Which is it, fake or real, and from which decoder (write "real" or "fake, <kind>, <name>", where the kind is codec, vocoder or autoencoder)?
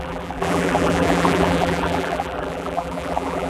fake, vocoder, BigVGAN v2